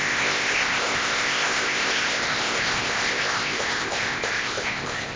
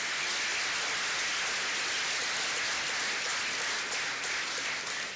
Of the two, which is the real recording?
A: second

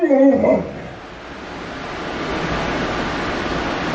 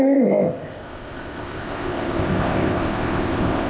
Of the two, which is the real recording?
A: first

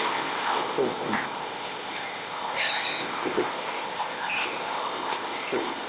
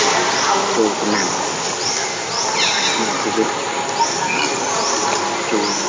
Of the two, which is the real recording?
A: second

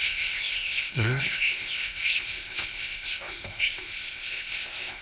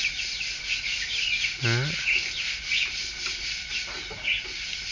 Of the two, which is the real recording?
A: second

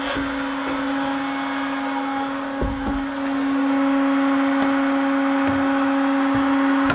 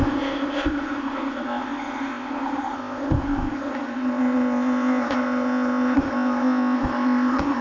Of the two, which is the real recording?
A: first